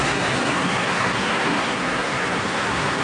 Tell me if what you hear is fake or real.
fake